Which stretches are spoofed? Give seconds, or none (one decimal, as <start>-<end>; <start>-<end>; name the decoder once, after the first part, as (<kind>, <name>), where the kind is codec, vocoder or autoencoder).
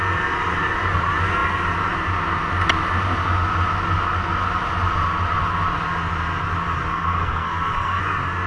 6.9-8.0 (codec, SNAC)